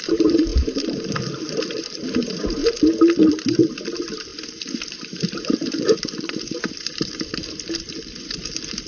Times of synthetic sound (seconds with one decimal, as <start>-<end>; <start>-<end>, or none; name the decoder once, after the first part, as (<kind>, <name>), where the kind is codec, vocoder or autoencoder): 0.0-2.6 (vocoder, BigVGAN v2); 3.3-8.9